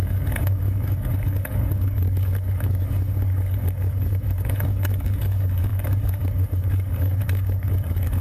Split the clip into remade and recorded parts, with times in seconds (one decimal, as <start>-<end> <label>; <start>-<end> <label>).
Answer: 0.0-8.2 remade